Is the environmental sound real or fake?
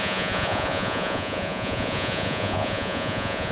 fake